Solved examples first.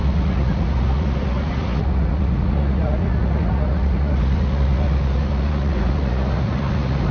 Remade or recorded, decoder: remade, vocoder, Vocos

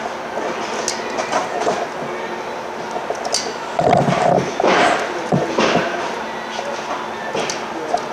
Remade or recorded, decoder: recorded